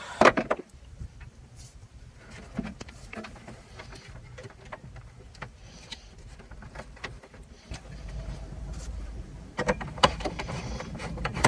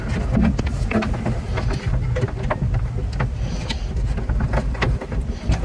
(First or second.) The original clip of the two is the second